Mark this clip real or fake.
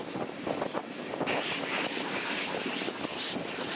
real